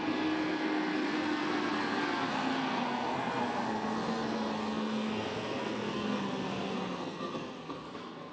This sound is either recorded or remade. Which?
remade